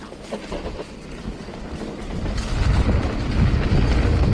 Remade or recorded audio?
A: recorded